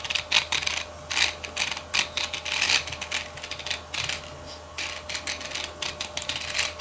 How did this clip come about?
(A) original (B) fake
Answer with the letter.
A